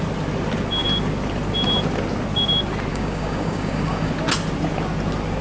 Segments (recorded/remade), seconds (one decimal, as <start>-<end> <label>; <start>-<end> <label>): 0.0-2.9 recorded; 2.9-4.1 remade; 4.1-5.4 recorded